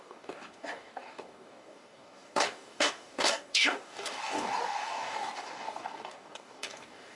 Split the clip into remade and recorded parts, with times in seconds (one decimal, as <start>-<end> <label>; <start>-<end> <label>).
0.0-7.2 remade